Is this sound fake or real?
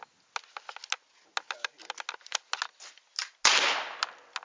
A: real